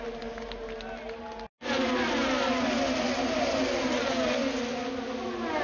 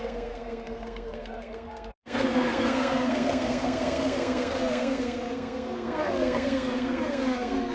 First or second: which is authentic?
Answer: first